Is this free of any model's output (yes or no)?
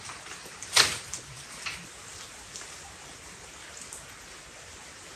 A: yes